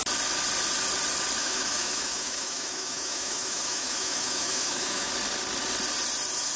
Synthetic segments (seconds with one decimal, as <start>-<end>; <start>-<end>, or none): 1.4-5.1